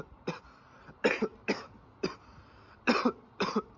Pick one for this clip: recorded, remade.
recorded